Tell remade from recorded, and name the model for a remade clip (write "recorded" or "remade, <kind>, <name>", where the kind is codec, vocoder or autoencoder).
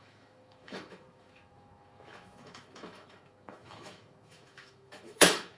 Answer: remade, autoencoder, DAC-VAE